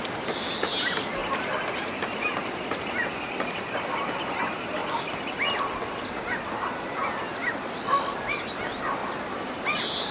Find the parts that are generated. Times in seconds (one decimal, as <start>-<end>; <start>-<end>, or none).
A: 1.2-4.3; 4.8-5.6; 7.0-7.5; 9.0-10.1